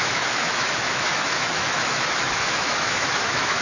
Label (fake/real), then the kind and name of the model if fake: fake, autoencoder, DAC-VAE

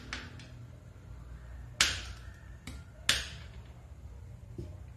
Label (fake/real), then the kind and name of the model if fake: real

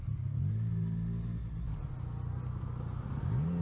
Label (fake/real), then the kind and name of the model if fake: real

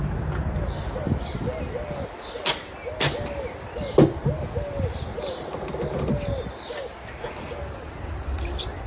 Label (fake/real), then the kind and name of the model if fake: real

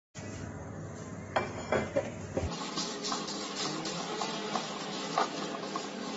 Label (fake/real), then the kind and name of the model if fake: real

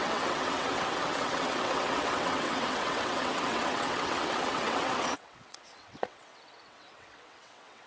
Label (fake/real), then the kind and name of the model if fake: fake, vocoder, WaveNeXt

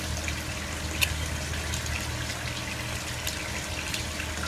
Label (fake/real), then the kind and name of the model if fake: real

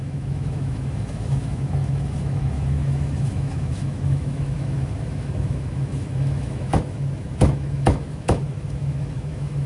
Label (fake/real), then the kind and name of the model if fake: fake, autoencoder, DAC-VAE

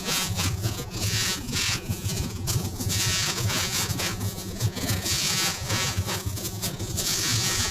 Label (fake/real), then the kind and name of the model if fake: fake, vocoder, Vocos